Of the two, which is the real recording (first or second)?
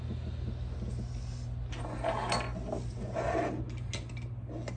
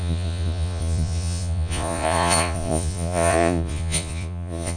first